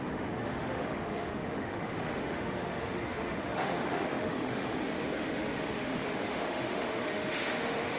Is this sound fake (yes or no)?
yes